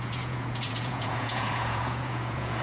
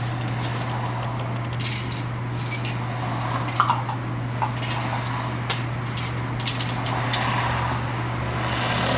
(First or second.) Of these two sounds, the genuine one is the second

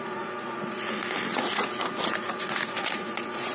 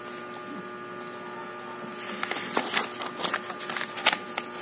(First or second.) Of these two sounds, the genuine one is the second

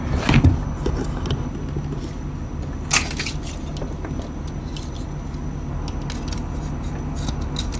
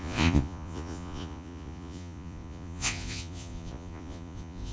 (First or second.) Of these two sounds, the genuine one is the first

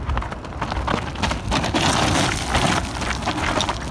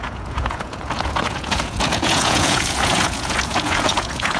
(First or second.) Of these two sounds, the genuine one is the first